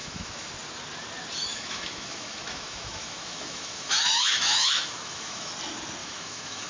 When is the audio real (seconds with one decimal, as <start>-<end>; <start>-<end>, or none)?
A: 0.5-1.5; 5.5-6.0